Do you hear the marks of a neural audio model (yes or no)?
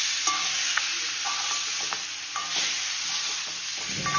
no